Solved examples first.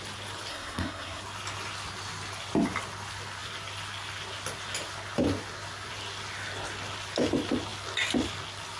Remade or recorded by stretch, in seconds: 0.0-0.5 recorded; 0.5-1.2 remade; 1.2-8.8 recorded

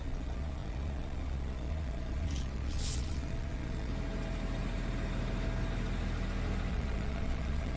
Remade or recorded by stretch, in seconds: 0.0-3.9 remade; 3.9-6.7 recorded; 6.7-7.8 remade

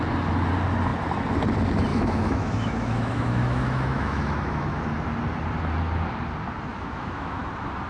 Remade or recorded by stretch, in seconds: 0.0-1.9 recorded; 1.9-4.8 remade; 4.8-6.7 recorded; 6.7-7.4 remade; 7.4-7.9 recorded